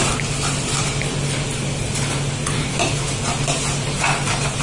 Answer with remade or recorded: recorded